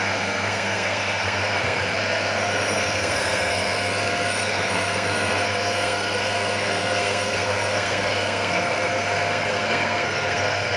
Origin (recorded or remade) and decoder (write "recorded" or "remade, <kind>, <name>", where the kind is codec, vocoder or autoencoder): remade, codec, SNAC